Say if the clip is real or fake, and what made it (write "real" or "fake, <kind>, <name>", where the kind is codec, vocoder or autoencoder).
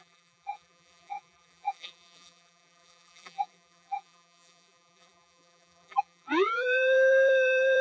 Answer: fake, vocoder, BigVGAN v2